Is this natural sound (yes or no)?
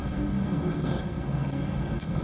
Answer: no